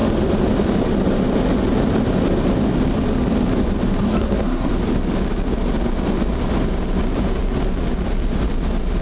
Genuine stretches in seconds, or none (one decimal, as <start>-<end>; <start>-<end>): 0.0-4.0; 4.7-9.0